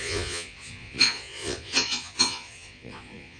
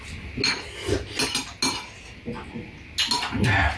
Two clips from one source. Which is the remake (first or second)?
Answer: first